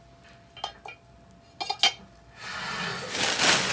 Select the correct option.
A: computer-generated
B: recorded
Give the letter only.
B